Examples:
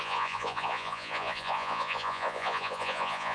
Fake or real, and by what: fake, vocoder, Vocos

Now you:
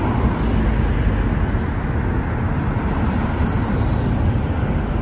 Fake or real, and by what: real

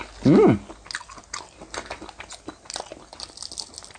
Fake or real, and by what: real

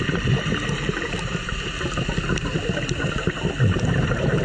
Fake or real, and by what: real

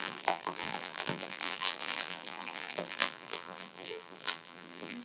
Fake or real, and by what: fake, vocoder, BigVGAN v2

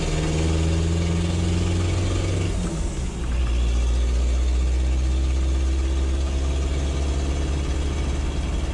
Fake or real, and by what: real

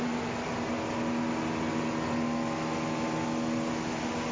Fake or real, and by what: real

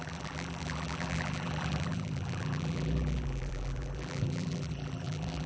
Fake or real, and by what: fake, vocoder, BigVGAN v2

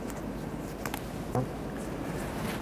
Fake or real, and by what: real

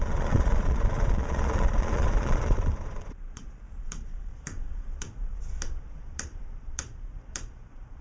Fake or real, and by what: fake, vocoder, Vocos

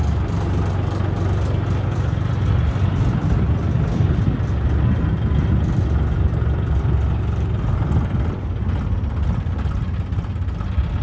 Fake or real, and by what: real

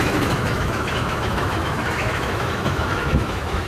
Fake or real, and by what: fake, autoencoder, DAC-VAE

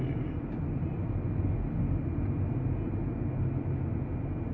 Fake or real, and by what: real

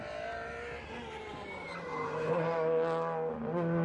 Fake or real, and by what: real